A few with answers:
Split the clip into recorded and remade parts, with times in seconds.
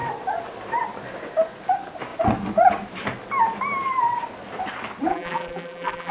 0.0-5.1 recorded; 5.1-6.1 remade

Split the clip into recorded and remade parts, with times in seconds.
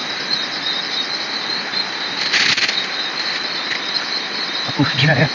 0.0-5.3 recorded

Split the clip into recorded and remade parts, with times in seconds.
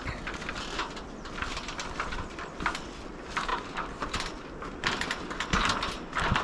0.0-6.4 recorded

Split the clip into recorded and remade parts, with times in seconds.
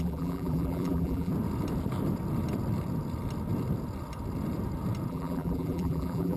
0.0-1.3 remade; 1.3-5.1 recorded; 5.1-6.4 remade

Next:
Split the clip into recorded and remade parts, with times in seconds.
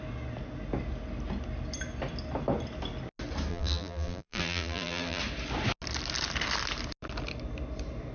0.0-3.5 recorded; 3.5-5.2 remade; 5.2-8.1 recorded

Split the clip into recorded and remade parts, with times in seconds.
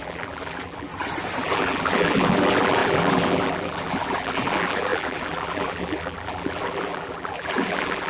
0.0-0.9 remade; 0.9-1.4 recorded; 1.4-8.1 remade